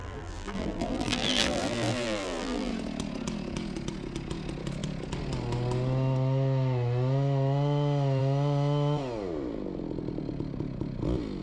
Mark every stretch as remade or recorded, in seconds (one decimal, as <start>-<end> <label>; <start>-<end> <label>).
0.0-2.7 remade; 2.7-11.4 recorded